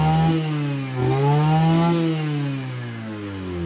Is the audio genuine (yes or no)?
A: yes